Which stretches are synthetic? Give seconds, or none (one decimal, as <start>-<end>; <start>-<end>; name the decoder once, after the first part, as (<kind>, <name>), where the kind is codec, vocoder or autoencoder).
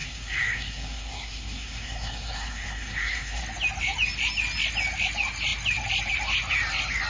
0.0-3.4 (codec, SNAC)